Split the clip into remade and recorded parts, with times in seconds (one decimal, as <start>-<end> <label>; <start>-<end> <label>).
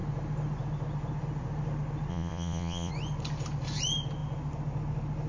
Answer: 0.0-2.1 recorded; 2.1-2.9 remade; 2.9-5.3 recorded